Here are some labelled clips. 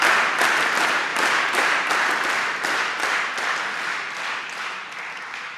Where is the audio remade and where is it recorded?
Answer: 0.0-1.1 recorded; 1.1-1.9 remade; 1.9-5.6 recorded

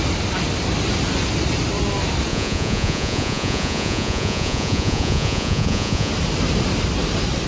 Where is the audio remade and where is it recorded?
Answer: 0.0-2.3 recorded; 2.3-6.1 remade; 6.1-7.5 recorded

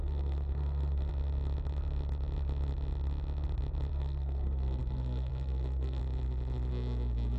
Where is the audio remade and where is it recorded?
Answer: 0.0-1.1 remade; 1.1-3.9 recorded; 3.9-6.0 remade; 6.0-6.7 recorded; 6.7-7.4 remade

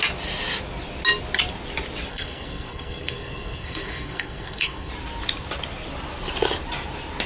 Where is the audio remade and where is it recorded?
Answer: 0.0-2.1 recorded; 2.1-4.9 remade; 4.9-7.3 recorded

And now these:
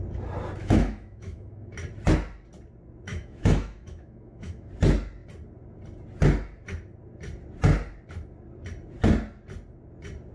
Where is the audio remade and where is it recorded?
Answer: 0.0-0.6 recorded; 0.6-1.7 remade; 1.7-3.1 recorded; 3.1-4.7 remade; 4.7-10.3 recorded